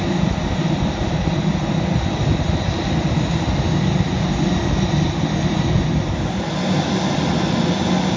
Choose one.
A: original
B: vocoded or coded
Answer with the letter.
A